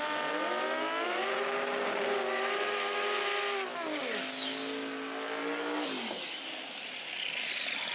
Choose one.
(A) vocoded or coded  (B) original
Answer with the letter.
B